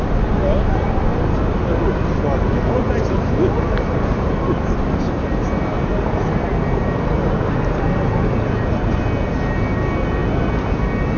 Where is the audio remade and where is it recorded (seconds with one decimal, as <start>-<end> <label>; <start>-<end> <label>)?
0.0-11.2 recorded